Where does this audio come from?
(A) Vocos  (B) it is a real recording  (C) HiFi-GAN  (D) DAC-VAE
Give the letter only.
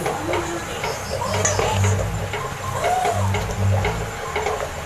B